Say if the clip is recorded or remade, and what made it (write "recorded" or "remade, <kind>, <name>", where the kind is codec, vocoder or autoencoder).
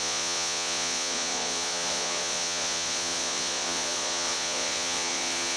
remade, vocoder, Vocos